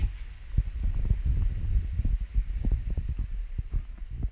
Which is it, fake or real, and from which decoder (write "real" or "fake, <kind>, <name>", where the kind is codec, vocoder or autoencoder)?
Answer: real